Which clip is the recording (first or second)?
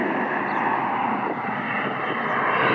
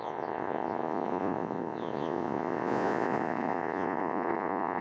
first